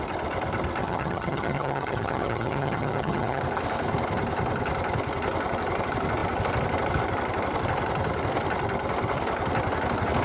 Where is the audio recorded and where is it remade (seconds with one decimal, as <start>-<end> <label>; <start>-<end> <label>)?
0.0-0.8 recorded; 0.8-3.4 remade; 3.4-10.2 recorded